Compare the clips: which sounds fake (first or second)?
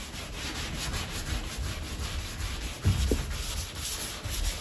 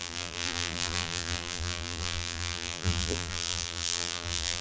second